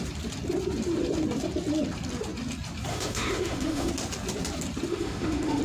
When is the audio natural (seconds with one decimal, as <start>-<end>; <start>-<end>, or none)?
0.0-2.9; 3.9-4.9